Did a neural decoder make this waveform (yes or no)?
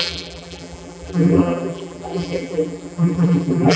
yes